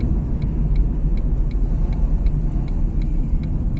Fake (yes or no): no